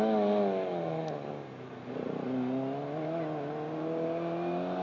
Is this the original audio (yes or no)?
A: yes